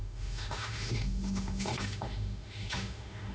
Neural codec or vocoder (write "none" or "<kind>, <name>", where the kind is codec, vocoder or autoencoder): autoencoder, DAC-VAE